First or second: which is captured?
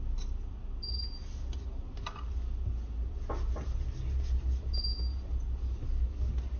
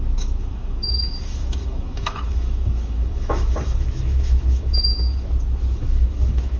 first